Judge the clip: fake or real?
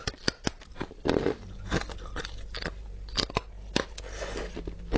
real